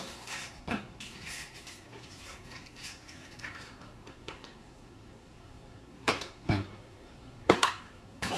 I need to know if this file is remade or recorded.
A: remade